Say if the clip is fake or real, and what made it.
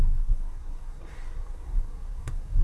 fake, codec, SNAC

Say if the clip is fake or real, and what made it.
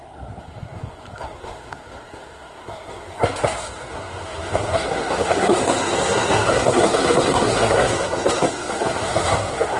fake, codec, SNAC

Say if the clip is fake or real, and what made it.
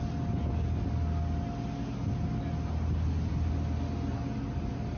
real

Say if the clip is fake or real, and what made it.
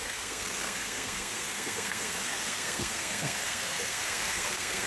fake, codec, SNAC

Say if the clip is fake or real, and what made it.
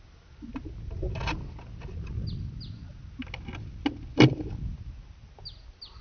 real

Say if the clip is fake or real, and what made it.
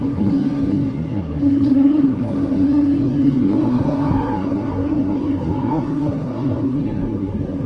fake, codec, SNAC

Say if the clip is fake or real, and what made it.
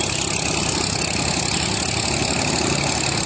real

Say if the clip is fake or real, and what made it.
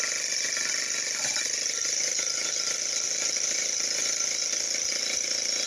real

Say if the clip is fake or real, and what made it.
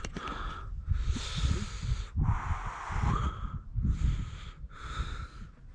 real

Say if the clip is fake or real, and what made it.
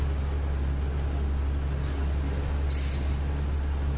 real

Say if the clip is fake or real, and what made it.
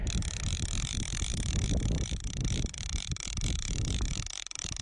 real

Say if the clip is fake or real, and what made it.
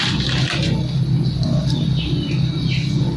real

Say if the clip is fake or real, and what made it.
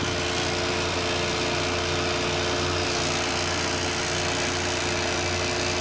real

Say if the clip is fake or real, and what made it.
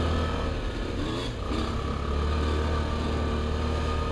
real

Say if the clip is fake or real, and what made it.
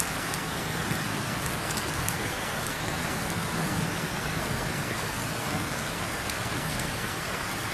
fake, codec, SNAC